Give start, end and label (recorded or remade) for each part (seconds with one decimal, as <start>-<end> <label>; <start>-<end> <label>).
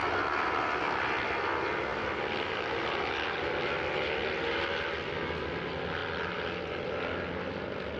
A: 0.0-1.9 recorded; 1.9-4.9 remade; 4.9-8.0 recorded